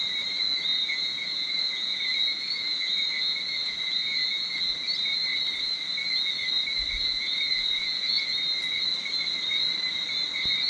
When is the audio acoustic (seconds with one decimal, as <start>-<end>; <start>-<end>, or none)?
0.0-0.7; 4.6-7.0; 8.4-10.7